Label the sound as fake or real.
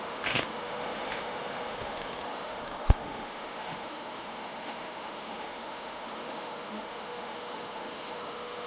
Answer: fake